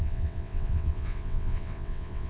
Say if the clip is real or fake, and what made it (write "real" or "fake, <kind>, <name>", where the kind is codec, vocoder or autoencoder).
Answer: fake, vocoder, WaveNeXt